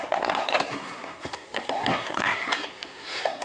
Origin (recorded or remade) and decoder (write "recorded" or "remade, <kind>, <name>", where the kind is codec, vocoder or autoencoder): remade, codec, SNAC